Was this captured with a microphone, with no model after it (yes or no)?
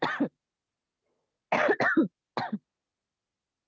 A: yes